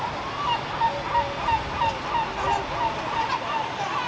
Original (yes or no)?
yes